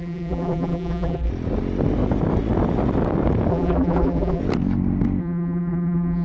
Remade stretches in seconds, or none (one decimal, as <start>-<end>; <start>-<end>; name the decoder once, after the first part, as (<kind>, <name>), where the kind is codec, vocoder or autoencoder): 0.0-1.3 (vocoder, BigVGAN v2); 3.5-4.4; 5.2-6.2